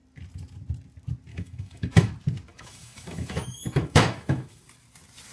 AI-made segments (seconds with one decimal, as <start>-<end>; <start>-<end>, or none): 1.3-2.1; 2.5-4.6